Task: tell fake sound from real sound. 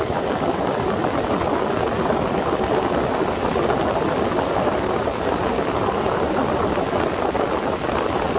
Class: real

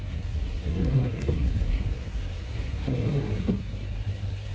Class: fake